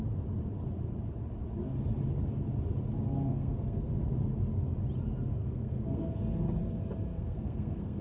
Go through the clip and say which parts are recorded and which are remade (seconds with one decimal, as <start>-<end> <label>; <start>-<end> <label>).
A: 0.0-3.3 recorded; 3.3-3.9 remade; 3.9-5.4 recorded; 5.4-6.2 remade; 6.2-7.1 recorded; 7.1-8.0 remade